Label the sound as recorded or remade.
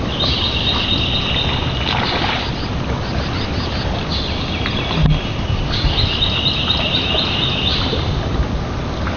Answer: recorded